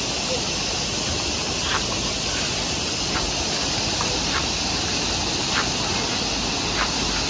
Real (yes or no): yes